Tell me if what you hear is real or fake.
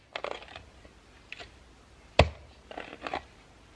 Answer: real